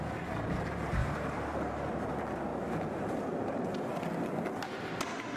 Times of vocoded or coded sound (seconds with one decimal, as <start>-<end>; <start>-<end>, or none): 1.0-2.1; 2.5-3.9